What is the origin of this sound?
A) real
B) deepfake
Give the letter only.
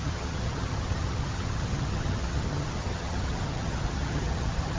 B